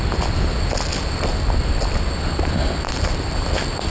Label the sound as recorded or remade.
recorded